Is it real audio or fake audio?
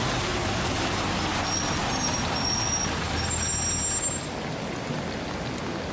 real